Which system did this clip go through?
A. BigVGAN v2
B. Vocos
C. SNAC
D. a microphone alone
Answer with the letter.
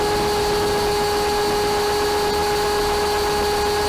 D